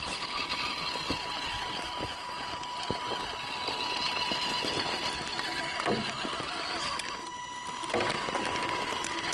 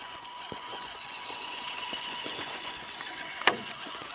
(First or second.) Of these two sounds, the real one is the first